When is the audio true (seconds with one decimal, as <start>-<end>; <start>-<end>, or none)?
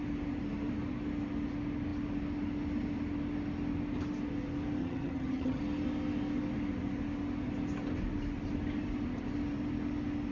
0.0-4.8; 5.6-10.3